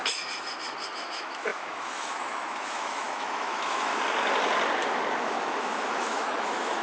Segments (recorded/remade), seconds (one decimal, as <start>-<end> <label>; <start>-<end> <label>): 0.0-1.0 recorded; 1.0-3.9 remade; 3.9-5.2 recorded; 5.2-6.8 remade